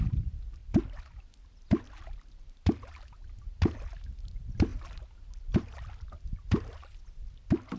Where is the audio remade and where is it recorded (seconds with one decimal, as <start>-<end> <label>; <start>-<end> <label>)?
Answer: 0.0-0.6 remade; 0.6-4.1 recorded; 4.1-7.8 remade